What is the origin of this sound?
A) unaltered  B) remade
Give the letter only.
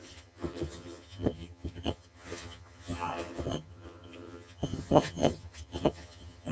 B